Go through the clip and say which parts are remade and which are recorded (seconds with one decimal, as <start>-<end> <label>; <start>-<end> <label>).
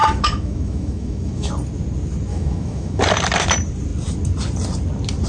0.0-1.5 remade; 1.5-2.3 recorded; 2.3-3.0 remade; 3.0-5.3 recorded